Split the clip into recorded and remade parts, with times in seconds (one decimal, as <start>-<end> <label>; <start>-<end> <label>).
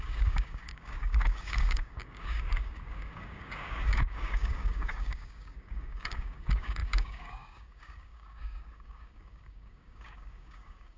0.0-11.0 remade